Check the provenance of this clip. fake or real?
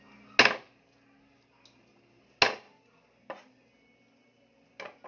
real